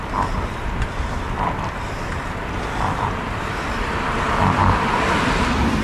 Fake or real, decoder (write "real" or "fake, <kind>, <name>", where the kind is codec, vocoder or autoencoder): fake, vocoder, BigVGAN v2